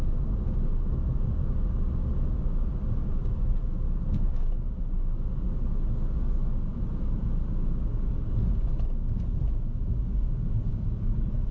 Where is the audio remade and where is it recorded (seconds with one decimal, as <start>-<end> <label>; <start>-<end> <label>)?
0.0-10.7 recorded; 10.7-11.5 remade